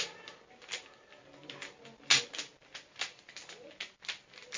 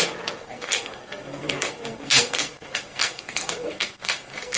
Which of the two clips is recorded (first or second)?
first